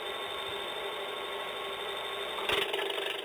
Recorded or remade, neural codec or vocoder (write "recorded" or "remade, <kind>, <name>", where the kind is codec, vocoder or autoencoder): recorded